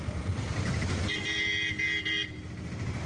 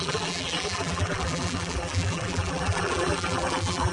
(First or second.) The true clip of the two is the first